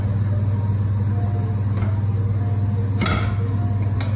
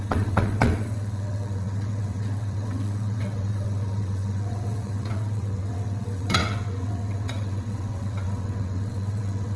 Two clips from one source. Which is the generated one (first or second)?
second